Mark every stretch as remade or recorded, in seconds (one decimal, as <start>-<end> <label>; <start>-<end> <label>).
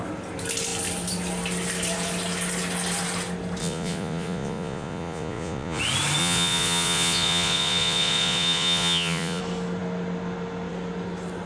0.0-3.6 recorded; 3.6-5.8 remade; 5.8-6.2 recorded; 6.2-9.4 remade; 9.4-11.5 recorded